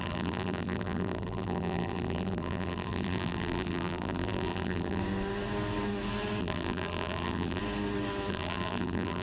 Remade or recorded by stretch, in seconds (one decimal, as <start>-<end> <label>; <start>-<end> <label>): 0.0-5.0 remade; 5.0-6.4 recorded; 6.4-7.6 remade; 7.6-8.3 recorded; 8.3-9.2 remade